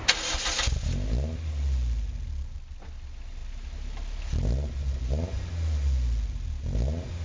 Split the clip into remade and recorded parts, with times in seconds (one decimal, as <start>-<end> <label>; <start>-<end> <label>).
0.0-7.2 recorded